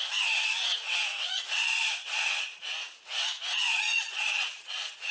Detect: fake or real fake